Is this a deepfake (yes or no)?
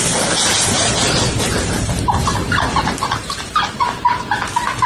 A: no